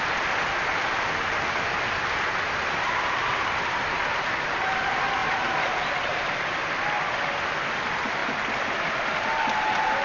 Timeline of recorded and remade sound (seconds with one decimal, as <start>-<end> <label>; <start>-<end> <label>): 0.0-5.2 recorded; 5.2-6.6 remade; 6.6-10.0 recorded